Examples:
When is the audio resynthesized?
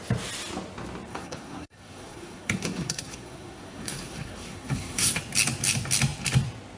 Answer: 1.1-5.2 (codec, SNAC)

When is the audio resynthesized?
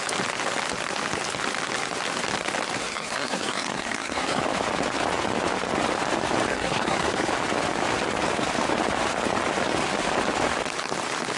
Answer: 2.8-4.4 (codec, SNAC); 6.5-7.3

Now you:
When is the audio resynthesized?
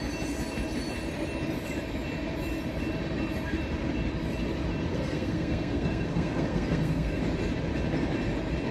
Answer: 4.9-7.2 (codec, SNAC)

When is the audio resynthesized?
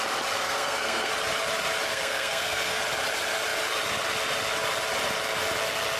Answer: 0.4-1.1 (codec, SNAC); 1.9-2.8